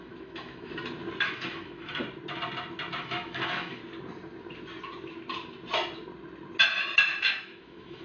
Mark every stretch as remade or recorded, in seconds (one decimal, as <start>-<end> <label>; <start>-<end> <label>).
0.0-0.7 remade; 0.7-1.2 recorded; 1.2-2.0 remade; 2.0-3.0 recorded; 3.0-3.8 remade; 3.8-7.1 recorded; 7.1-8.0 remade